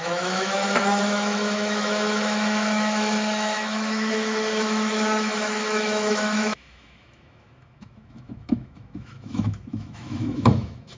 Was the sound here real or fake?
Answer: fake